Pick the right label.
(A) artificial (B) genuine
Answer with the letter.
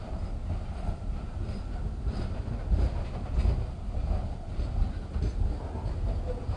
B